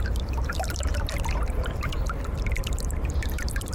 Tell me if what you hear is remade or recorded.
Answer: remade